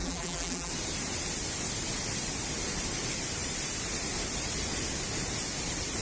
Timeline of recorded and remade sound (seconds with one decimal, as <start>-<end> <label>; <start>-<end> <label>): 0.0-0.7 remade; 0.7-6.0 recorded